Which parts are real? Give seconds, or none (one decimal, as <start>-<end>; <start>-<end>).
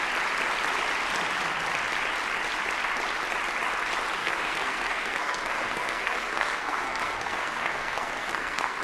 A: 0.0-4.2